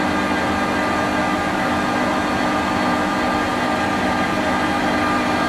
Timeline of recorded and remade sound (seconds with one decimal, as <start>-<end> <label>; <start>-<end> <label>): 0.0-1.2 recorded; 1.2-1.7 remade; 1.7-5.5 recorded